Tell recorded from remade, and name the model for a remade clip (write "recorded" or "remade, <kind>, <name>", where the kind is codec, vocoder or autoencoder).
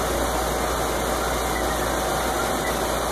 recorded